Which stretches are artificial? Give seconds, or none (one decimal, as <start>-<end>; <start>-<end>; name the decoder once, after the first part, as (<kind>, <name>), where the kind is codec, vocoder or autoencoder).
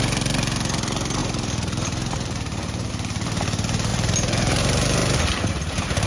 1.2-2.9 (vocoder, BigVGAN v2); 3.9-4.5; 5.0-6.1